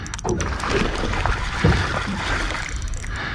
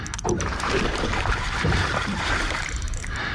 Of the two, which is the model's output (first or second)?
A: second